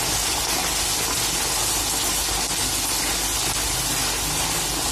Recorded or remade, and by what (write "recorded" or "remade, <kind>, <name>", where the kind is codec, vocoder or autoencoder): recorded